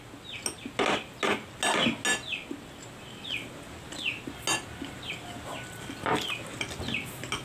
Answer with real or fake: real